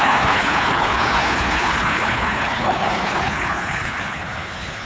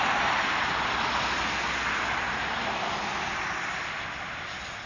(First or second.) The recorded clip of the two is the second